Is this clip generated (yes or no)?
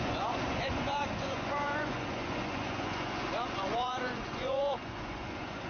yes